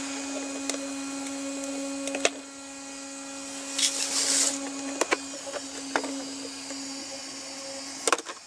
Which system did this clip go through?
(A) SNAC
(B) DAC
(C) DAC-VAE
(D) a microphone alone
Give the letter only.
D